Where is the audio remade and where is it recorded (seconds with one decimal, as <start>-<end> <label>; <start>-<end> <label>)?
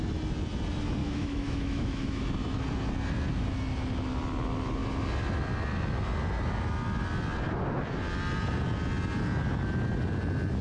0.0-1.0 recorded; 1.0-2.2 remade; 2.2-10.6 recorded